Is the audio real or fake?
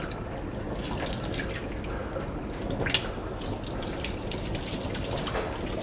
real